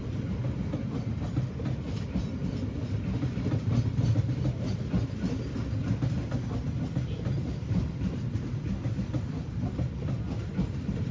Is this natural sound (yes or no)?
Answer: yes